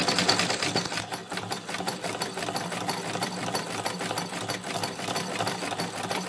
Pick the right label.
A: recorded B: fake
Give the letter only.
A